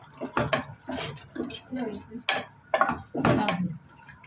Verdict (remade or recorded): recorded